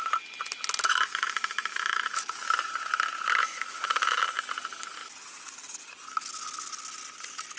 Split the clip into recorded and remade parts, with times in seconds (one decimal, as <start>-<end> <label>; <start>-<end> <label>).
0.0-1.1 recorded; 1.1-2.6 remade; 2.6-3.4 recorded; 3.4-4.2 remade; 4.2-7.6 recorded